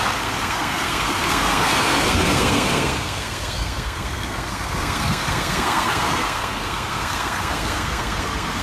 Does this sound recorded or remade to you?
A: remade